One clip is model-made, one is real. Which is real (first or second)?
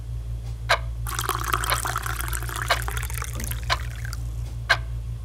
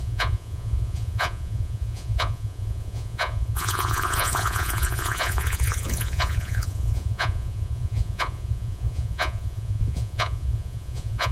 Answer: first